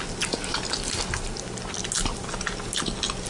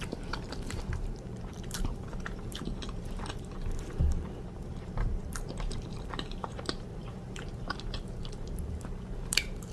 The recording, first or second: first